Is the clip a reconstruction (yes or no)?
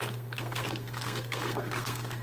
yes